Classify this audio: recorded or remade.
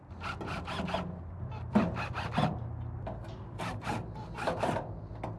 remade